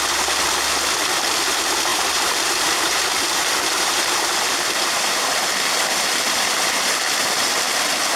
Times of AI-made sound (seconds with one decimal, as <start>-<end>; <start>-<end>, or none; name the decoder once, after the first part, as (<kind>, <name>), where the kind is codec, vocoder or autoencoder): 1.9-5.3 (vocoder, BigVGAN v2)